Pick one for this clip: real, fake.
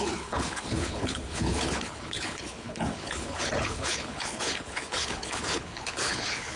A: fake